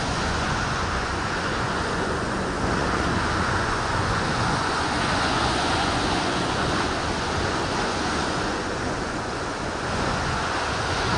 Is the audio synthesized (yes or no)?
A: yes